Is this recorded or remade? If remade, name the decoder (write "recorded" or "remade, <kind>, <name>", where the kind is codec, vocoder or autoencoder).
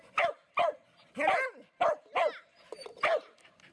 recorded